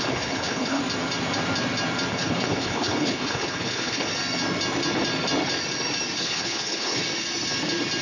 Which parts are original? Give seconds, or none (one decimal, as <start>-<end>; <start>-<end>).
0.8-2.1; 4.1-6.2; 7.0-8.0